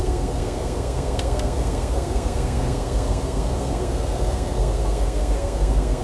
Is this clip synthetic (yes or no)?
yes